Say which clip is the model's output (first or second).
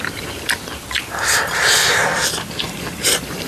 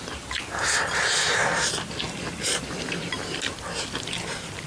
first